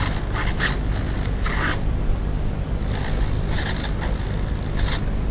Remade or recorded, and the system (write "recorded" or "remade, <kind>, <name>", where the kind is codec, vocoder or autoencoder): recorded